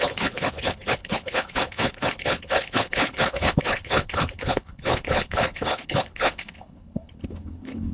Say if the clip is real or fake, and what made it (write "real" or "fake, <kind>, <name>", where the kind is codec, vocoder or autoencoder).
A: fake, codec, HILCodec